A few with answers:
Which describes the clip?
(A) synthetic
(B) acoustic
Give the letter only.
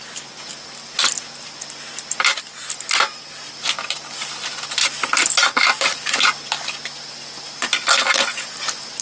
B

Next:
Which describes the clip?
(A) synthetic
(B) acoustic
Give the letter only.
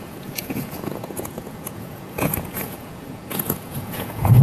A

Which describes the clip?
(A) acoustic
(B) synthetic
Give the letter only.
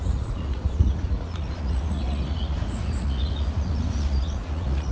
B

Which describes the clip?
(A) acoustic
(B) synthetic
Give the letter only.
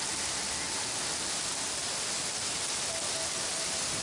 A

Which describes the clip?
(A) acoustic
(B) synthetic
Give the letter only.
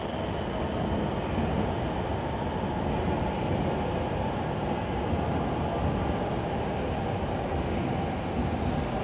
A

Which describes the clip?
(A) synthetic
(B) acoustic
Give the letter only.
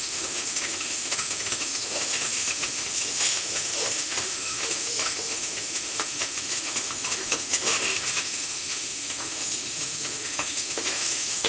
A